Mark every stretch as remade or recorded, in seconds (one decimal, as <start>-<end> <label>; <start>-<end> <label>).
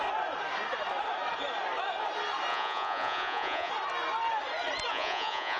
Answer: 0.0-2.5 recorded; 2.5-3.7 remade; 3.7-4.9 recorded; 4.9-5.6 remade